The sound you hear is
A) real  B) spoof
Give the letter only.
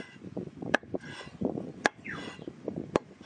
B